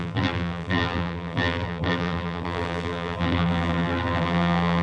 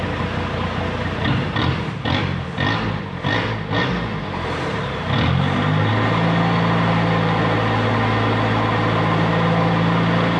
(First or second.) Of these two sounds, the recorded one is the second